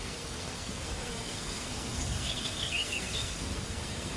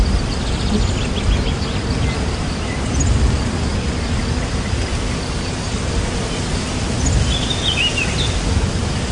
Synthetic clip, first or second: first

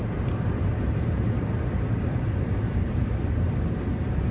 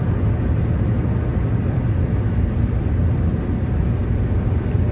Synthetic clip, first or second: first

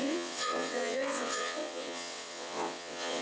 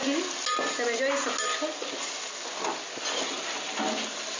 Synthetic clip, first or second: first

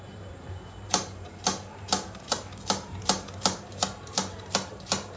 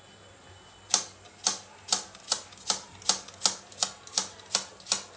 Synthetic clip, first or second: first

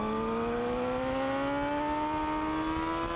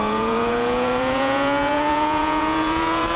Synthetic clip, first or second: second